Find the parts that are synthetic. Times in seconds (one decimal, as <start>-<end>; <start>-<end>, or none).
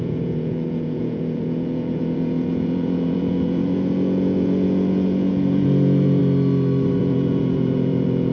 0.0-6.2; 7.0-8.3